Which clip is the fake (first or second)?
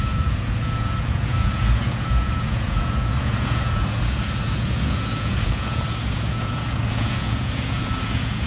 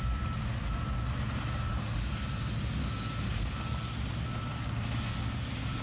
first